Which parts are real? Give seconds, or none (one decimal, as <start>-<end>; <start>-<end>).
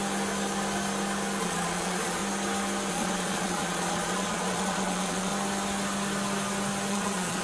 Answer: 0.0-1.4; 2.2-2.9; 5.3-6.9